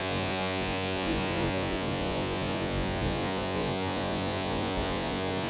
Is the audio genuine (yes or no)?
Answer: no